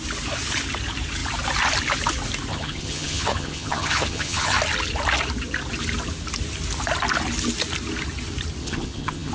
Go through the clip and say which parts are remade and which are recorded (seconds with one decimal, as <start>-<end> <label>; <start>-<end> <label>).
0.0-2.5 recorded; 2.5-4.6 remade; 4.6-8.6 recorded; 8.6-9.3 remade